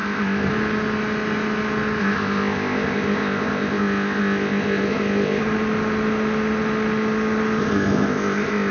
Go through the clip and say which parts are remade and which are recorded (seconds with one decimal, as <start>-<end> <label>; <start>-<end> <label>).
0.0-0.5 remade; 0.5-2.0 recorded; 2.0-5.4 remade; 5.4-7.6 recorded; 7.6-8.7 remade